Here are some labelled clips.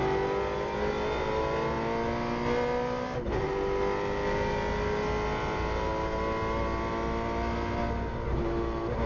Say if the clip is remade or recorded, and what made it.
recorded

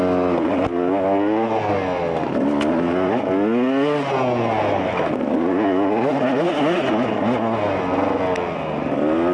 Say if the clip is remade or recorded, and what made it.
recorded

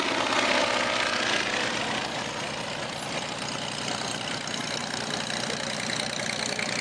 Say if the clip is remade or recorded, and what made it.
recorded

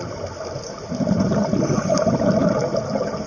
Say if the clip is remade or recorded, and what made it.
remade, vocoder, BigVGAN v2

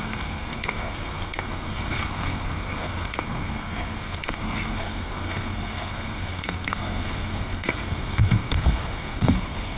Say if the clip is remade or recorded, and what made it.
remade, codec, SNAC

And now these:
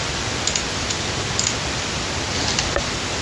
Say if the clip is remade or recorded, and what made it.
recorded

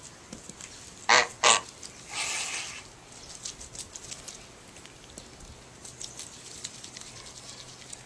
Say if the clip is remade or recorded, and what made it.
recorded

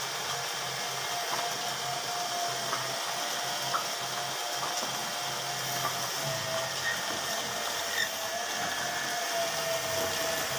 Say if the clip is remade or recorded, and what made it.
recorded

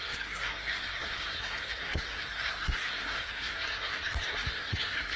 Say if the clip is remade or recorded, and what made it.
remade, codec, SNAC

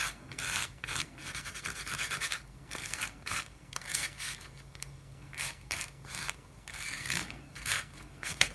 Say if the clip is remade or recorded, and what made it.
remade, codec, SNAC